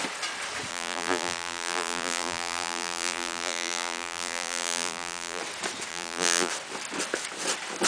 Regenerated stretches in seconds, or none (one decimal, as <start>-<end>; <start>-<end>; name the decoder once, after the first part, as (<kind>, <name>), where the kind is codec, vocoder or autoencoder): 0.7-5.4 (vocoder, BigVGAN v2); 5.9-6.5